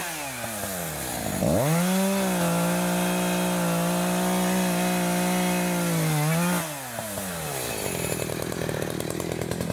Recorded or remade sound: recorded